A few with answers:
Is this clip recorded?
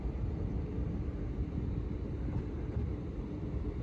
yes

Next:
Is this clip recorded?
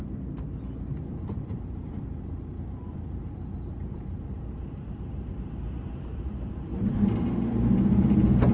no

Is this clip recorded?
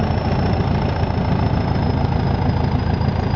yes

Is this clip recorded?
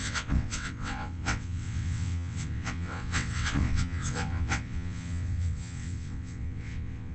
no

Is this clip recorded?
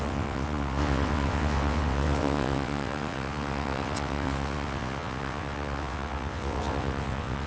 no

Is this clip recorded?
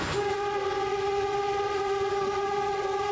no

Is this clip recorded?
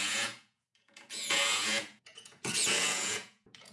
no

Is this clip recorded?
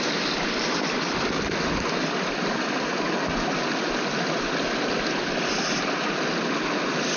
yes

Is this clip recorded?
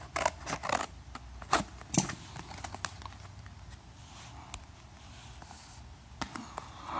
yes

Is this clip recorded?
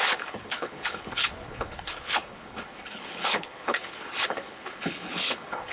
no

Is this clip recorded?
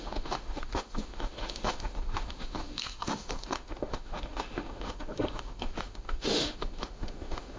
no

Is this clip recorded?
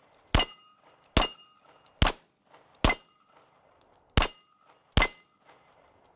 yes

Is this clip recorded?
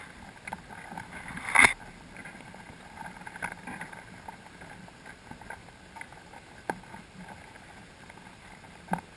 yes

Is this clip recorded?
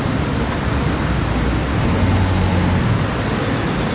yes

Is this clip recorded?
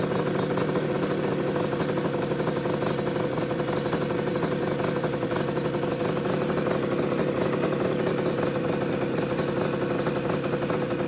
yes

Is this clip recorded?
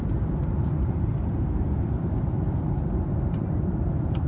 no